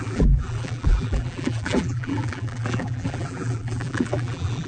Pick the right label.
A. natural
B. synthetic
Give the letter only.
B